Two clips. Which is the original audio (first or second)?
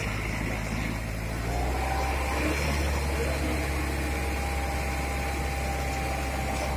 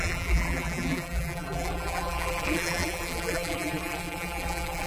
first